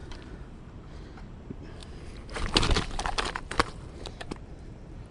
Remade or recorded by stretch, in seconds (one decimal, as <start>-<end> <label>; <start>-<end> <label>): 0.0-1.8 remade; 1.8-3.4 recorded; 3.4-5.1 remade